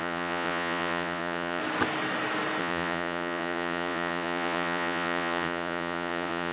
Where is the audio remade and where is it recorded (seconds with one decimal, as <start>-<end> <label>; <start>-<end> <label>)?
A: 0.0-1.6 remade; 1.6-2.6 recorded; 2.6-6.5 remade